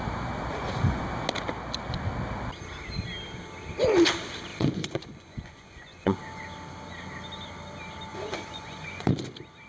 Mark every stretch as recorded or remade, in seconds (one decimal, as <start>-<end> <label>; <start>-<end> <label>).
0.0-0.5 recorded; 0.5-1.0 remade; 1.0-4.5 recorded; 4.5-6.2 remade; 6.2-8.1 recorded; 8.1-9.1 remade; 9.1-9.7 recorded